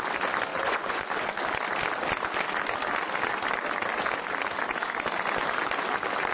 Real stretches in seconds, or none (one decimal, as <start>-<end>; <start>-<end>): 0.0-0.5; 1.3-6.3